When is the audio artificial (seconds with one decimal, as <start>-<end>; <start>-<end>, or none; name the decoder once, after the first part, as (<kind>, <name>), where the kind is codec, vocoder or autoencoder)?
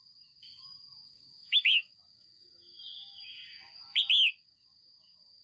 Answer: 0.0-3.7 (codec, DAC); 4.3-5.4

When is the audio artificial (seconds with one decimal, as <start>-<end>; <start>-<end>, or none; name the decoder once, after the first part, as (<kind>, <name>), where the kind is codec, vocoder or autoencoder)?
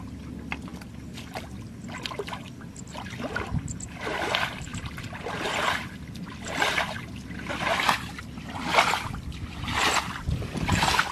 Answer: 0.0-0.7 (vocoder, BigVGAN v2); 2.8-11.1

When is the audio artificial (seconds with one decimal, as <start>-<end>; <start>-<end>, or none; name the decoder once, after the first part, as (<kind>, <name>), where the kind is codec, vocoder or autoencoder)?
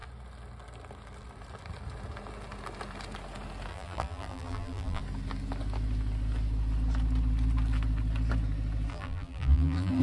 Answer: 3.7-5.0 (vocoder, BigVGAN v2); 8.9-10.0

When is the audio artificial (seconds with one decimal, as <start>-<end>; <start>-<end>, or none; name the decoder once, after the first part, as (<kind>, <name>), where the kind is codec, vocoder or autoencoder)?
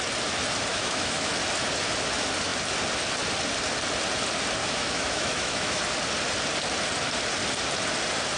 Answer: 0.7-1.3 (autoencoder, DAC-VAE); 4.6-5.8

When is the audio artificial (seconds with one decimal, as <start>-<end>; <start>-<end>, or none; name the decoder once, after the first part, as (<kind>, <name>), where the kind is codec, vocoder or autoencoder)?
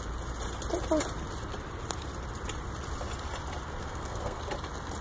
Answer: 3.8-4.4 (codec, SNAC)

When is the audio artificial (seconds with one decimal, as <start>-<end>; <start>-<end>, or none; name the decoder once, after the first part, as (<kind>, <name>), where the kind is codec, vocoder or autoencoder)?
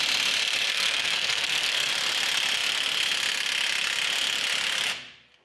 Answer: 0.7-1.9 (codec, SNAC)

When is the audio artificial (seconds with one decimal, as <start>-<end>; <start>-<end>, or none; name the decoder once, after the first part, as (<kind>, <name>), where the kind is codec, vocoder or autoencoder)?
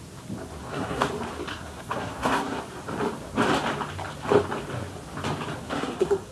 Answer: 0.6-1.1 (codec, SNAC); 1.5-2.6; 5.6-6.3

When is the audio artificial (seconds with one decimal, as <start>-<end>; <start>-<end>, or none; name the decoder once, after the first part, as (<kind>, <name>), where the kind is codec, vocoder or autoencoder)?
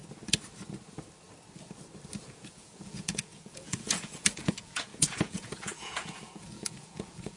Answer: 2.2-7.4 (vocoder, Vocos)